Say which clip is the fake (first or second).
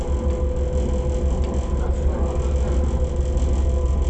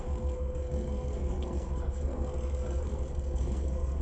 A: second